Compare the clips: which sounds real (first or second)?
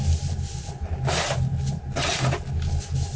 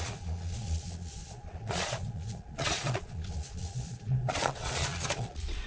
first